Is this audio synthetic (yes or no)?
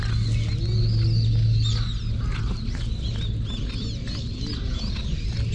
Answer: no